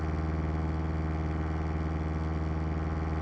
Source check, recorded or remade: recorded